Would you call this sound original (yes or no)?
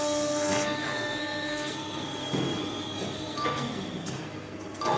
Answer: no